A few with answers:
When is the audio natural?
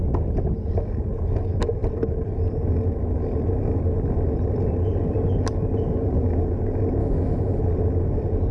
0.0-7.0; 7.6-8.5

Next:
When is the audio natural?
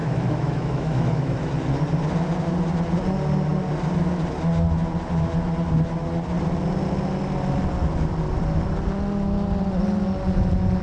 1.5-10.8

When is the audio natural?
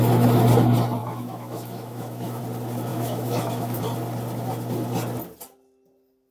0.0-1.0; 2.4-2.9; 3.8-6.3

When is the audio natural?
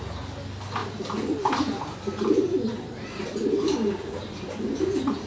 0.0-5.3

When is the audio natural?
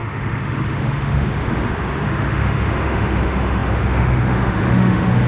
none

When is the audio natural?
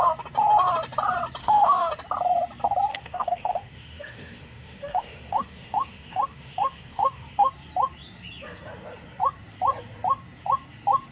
0.0-1.4; 1.9-2.9; 7.5-11.1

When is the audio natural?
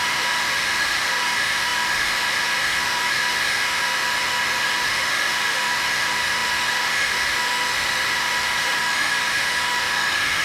none